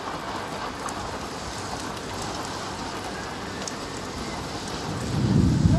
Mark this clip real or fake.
real